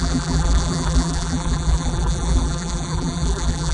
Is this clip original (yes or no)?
no